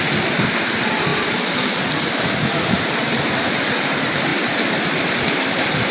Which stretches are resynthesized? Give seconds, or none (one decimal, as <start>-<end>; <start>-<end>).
0.0-5.9

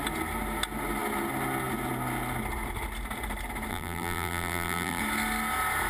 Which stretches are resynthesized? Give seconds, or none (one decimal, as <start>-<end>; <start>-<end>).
3.7-5.0